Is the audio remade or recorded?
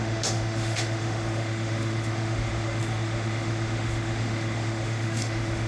remade